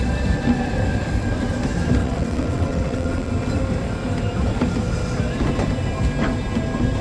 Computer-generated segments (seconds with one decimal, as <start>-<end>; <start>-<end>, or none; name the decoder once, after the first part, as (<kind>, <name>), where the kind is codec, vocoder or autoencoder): 2.0-3.3 (vocoder, WaveNeXt)